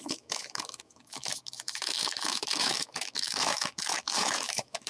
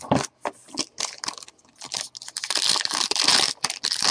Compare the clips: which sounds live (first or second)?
second